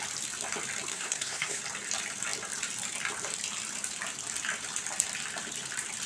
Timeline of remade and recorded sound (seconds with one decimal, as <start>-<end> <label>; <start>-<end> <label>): 0.0-0.9 recorded; 0.9-1.6 remade; 1.6-6.1 recorded